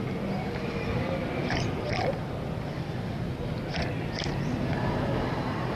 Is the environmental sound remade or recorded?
recorded